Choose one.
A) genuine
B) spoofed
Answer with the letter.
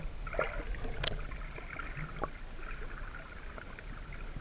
A